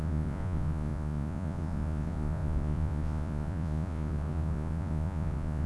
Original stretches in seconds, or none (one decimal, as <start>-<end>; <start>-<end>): none